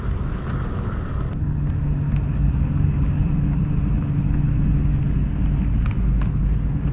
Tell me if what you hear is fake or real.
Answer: real